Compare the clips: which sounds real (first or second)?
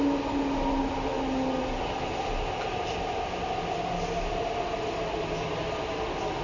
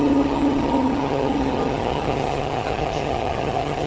first